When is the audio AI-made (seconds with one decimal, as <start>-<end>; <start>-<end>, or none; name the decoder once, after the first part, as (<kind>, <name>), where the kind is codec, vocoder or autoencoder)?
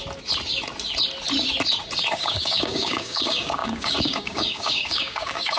2.1-5.6 (codec, DAC)